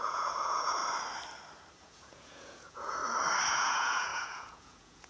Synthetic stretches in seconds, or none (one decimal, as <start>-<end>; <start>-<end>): 0.0-0.8; 1.8-3.0; 3.5-5.1